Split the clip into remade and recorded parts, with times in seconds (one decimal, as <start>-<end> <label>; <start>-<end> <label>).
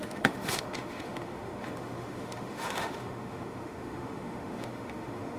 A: 0.0-5.4 remade